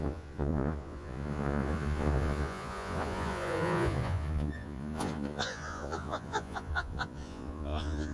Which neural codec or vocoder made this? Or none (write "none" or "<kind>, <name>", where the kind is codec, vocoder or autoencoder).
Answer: vocoder, Vocos